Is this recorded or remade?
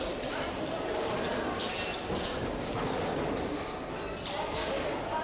recorded